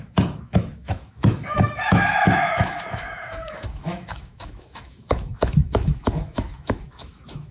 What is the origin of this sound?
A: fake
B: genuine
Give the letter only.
A